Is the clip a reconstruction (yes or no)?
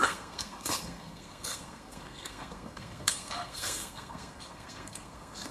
yes